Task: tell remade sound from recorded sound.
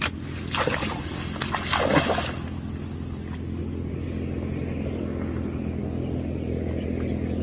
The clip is recorded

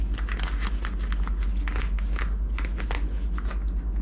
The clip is recorded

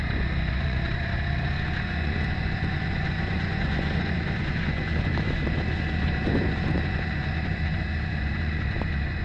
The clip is remade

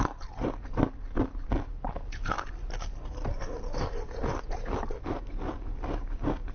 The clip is recorded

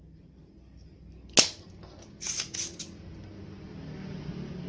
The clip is recorded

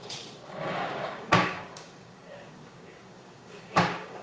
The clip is remade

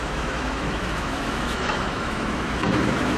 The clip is remade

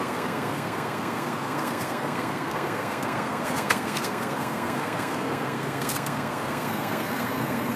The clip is remade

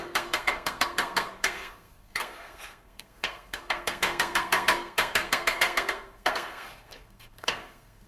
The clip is remade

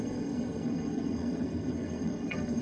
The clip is remade